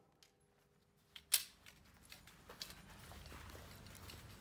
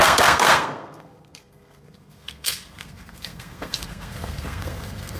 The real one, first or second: first